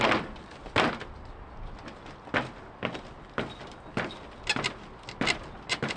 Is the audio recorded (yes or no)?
yes